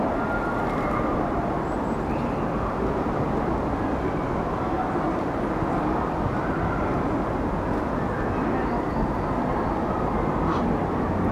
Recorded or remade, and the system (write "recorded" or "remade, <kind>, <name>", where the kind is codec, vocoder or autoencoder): recorded